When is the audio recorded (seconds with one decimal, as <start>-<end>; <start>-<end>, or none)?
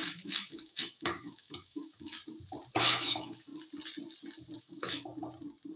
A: 2.2-2.8; 3.5-4.6; 5.1-5.8